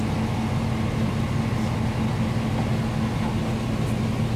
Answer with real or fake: real